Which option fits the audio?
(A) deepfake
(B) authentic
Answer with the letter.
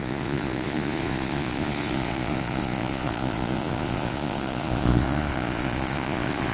A